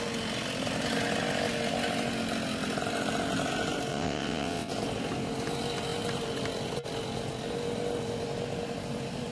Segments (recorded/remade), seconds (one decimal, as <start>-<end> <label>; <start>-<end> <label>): 0.0-3.9 recorded; 3.9-4.7 remade; 4.7-9.3 recorded